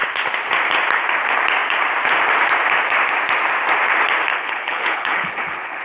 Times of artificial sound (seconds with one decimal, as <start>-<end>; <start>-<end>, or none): 4.3-5.8

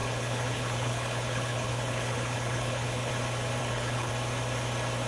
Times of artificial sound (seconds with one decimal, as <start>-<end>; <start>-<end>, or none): 0.0-3.1; 3.6-4.1

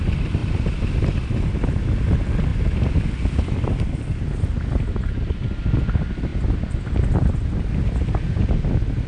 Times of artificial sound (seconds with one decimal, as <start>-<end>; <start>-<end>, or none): none